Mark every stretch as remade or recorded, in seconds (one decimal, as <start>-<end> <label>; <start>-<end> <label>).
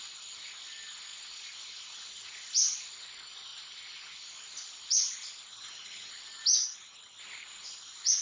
0.0-5.5 recorded; 5.5-6.1 remade; 6.1-6.6 recorded; 6.6-7.2 remade; 7.2-8.2 recorded